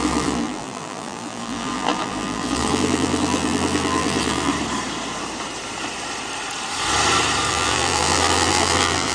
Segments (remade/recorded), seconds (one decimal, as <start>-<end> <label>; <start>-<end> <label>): 0.0-4.5 remade; 4.5-7.5 recorded; 7.5-9.1 remade